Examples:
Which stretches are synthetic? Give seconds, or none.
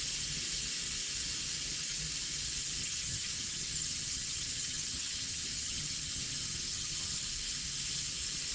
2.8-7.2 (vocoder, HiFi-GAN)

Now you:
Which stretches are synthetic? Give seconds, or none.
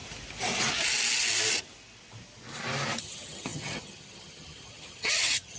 3.0-5.6 (vocoder, HiFi-GAN)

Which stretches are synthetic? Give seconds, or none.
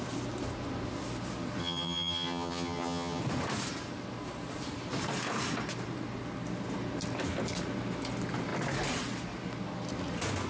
1.6-3.2 (vocoder, HiFi-GAN)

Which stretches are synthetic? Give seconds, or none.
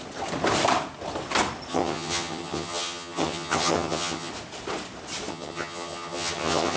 1.7-4.3 (vocoder, HiFi-GAN); 5.3-6.8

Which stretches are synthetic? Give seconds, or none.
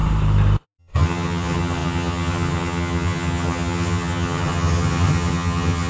0.8-5.9 (vocoder, HiFi-GAN)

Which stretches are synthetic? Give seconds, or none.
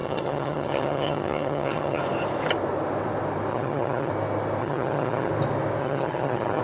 0.0-2.0 (vocoder, HiFi-GAN); 3.5-4.1; 4.6-5.3; 5.8-6.6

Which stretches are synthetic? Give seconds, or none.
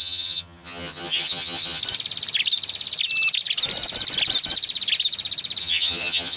0.0-1.8 (vocoder, HiFi-GAN); 5.6-6.4